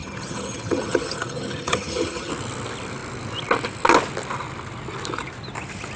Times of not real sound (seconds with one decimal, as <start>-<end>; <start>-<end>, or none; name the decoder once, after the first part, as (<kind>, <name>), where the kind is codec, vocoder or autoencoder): 0.0-2.3 (vocoder, HiFi-GAN)